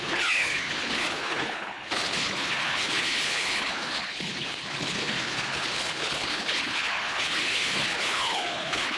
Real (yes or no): no